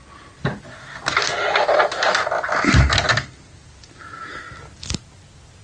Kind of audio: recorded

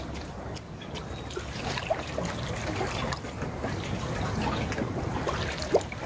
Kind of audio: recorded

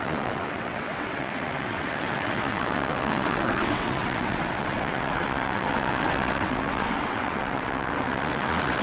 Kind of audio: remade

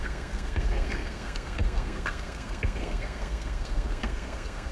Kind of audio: remade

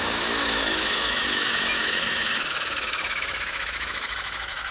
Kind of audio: remade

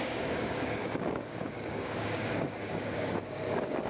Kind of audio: remade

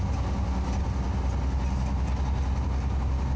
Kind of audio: recorded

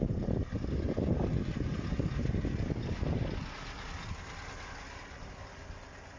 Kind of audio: recorded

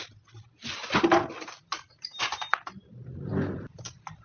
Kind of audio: remade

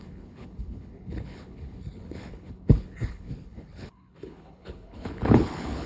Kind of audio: remade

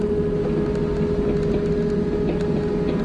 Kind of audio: recorded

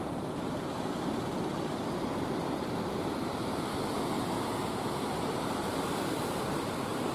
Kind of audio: remade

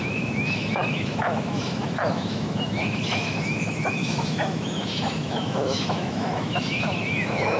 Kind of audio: remade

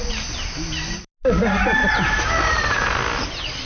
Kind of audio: recorded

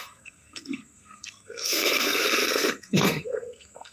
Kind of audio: remade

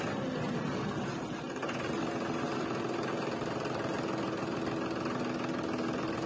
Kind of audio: recorded